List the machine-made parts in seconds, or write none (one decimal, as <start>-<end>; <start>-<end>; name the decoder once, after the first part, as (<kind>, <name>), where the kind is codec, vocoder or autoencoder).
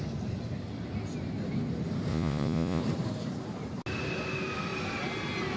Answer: 2.1-2.8 (vocoder, Vocos)